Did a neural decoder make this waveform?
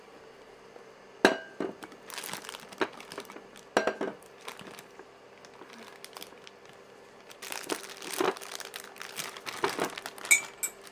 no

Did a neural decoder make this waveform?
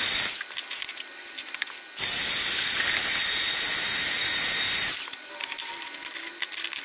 no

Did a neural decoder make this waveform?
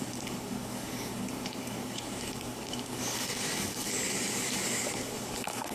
yes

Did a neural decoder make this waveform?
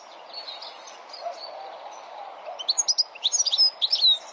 no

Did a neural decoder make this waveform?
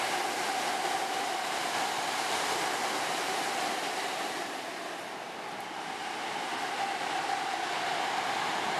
no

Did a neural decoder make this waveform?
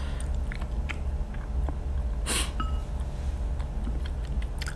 no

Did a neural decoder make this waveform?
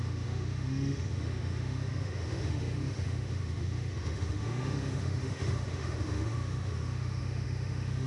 yes